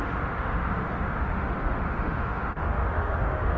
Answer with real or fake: fake